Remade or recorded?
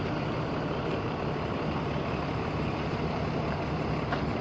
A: remade